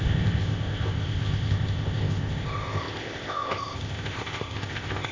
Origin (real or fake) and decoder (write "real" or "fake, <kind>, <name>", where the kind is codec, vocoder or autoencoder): fake, codec, ZipCodec